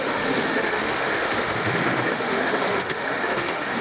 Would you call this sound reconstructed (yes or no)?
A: yes